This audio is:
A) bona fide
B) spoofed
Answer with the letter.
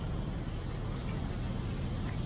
A